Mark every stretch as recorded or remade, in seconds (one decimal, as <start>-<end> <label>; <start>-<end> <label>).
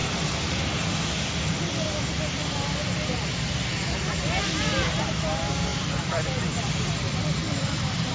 0.0-5.7 recorded; 5.7-8.1 remade